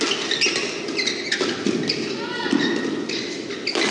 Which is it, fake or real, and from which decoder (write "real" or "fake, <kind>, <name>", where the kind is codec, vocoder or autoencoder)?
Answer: real